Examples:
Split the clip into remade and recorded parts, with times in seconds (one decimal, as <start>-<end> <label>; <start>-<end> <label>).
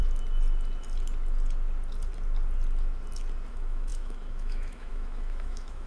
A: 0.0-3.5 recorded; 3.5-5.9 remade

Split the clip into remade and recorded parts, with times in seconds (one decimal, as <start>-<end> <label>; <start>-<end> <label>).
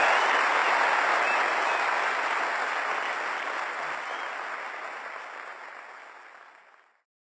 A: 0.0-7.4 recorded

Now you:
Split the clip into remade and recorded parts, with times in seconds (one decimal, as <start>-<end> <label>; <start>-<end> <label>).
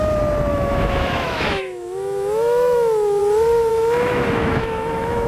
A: 0.0-0.5 recorded; 0.5-3.2 remade; 3.2-3.7 recorded; 3.7-5.3 remade